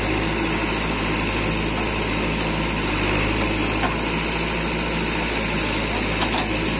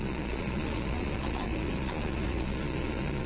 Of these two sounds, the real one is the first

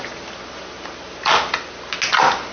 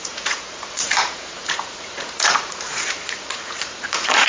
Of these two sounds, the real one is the first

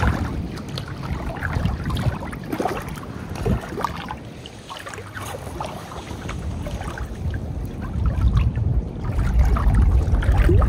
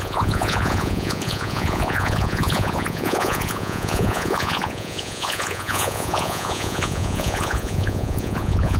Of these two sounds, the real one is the first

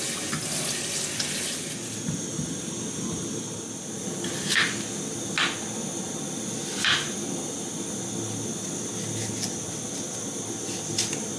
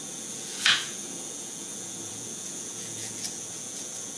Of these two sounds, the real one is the first